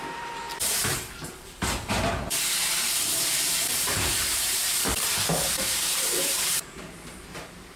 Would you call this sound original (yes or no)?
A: no